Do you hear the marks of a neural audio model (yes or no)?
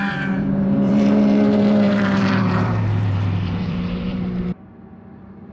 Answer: yes